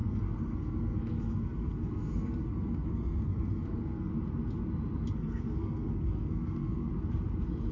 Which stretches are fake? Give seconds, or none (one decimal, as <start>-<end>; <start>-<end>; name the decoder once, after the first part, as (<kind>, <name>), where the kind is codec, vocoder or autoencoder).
0.0-4.1 (codec, SNAC); 5.1-6.9